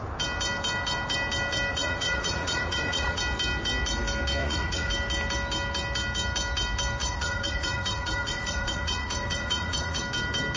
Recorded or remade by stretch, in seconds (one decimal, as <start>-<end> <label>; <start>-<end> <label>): 0.0-1.7 recorded; 1.7-3.2 remade; 3.2-4.4 recorded; 4.4-4.9 remade; 4.9-7.0 recorded; 7.0-10.0 remade; 10.0-10.6 recorded